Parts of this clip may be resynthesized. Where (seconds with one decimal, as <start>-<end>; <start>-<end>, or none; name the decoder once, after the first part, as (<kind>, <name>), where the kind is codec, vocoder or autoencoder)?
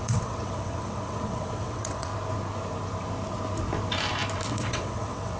0.0-2.1 (vocoder, WaveNeXt); 4.5-5.4